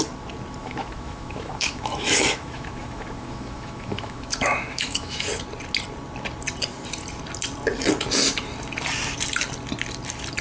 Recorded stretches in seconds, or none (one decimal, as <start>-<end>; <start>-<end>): 0.0-0.6; 5.3-10.4